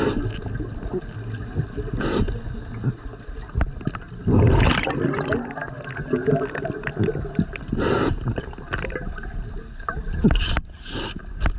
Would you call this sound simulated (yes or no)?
no